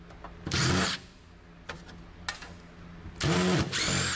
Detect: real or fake real